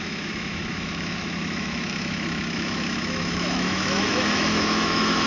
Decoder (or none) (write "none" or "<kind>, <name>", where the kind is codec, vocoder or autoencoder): autoencoder, DAC-VAE